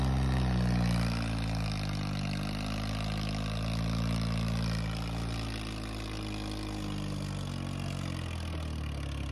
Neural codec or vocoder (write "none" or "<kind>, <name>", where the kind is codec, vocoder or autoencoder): none